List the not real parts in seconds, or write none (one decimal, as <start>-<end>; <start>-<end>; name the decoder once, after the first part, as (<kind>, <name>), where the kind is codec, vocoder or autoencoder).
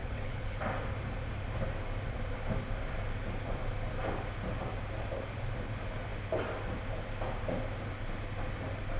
0.0-0.6 (codec, HILCodec)